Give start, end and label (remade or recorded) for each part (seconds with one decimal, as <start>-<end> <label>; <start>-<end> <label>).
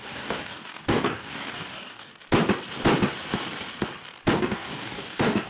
0.0-2.1 remade; 2.1-4.3 recorded; 4.3-5.5 remade